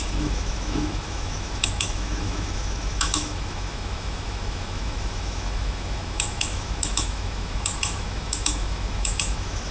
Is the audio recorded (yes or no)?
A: no